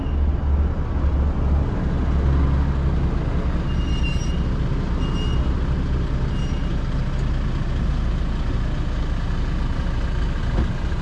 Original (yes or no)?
yes